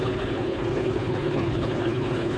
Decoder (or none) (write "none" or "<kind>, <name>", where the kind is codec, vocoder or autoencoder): codec, HILCodec